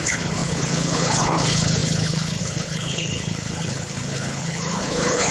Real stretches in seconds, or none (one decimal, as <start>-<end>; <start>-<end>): none